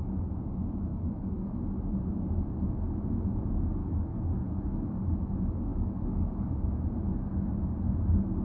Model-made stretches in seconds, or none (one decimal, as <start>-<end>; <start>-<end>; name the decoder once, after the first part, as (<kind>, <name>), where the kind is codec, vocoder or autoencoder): 0.9-1.5 (codec, DAC); 3.8-4.6; 5.7-6.5